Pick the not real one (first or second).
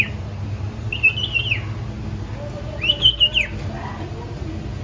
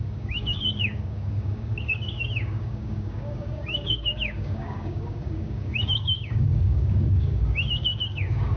second